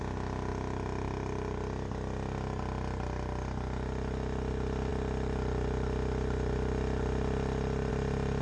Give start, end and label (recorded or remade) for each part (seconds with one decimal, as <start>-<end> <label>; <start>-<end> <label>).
0.0-8.4 recorded